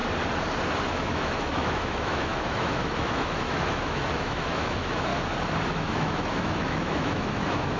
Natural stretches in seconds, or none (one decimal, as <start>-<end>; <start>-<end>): 0.0-0.8; 5.1-5.7